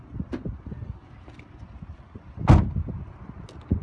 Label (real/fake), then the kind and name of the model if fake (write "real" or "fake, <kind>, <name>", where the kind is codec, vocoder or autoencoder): real